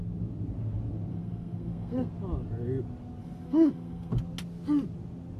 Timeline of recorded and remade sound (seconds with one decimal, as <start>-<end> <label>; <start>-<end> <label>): 0.0-1.1 recorded; 1.1-2.1 remade; 2.1-3.2 recorded; 3.2-4.1 remade; 4.1-5.4 recorded